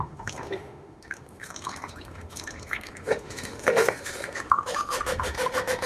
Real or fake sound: fake